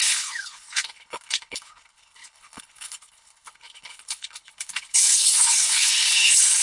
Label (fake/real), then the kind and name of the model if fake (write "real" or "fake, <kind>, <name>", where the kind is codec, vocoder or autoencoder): fake, codec, HILCodec